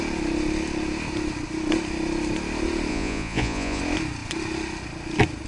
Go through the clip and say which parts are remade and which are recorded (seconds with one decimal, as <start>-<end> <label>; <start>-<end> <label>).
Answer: 0.0-2.9 recorded; 2.9-3.8 remade; 3.8-5.5 recorded